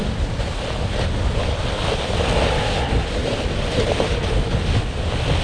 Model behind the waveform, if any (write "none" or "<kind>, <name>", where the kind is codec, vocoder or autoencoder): none